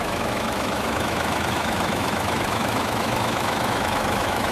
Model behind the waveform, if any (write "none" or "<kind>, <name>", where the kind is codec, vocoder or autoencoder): autoencoder, DAC-VAE